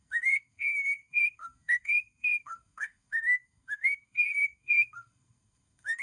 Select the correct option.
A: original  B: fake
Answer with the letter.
B